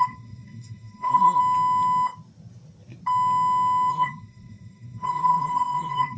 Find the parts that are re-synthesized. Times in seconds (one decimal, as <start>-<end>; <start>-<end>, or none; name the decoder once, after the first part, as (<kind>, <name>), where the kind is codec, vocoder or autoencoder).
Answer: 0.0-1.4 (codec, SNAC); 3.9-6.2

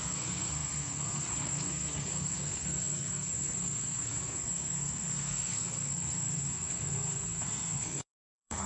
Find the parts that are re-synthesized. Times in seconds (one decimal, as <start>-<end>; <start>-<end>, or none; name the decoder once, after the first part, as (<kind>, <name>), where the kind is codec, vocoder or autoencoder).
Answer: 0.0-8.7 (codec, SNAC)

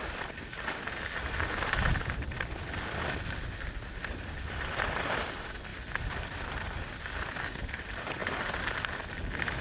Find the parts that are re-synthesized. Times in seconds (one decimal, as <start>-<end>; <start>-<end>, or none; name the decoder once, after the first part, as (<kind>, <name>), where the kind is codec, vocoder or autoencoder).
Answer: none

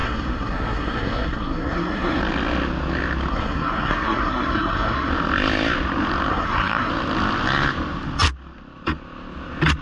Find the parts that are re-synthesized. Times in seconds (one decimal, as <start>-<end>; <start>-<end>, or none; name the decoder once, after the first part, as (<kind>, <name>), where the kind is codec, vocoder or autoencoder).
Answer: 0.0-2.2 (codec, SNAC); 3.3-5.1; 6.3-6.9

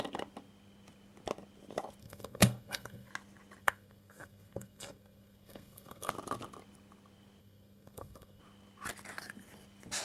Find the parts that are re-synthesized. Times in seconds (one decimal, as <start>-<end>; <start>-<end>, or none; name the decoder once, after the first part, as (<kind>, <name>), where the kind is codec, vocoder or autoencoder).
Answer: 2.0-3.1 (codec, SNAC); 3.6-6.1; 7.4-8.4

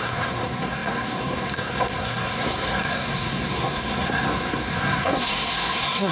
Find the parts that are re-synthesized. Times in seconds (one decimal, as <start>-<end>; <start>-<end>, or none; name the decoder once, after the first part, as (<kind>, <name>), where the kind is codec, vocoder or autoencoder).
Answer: 0.0-6.1 (codec, SNAC)

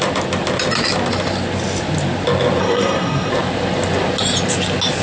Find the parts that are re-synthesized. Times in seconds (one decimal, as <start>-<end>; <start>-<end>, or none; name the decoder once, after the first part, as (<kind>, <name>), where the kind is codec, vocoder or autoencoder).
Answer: 2.6-3.3 (codec, SNAC)

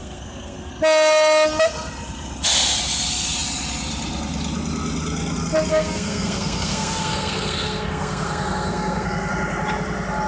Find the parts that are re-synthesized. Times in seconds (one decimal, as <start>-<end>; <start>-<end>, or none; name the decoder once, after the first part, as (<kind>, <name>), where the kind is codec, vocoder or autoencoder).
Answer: 0.0-0.7 (codec, SNAC); 5.7-9.3